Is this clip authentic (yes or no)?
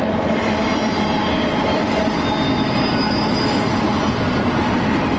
yes